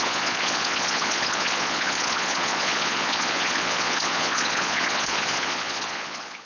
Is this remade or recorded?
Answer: remade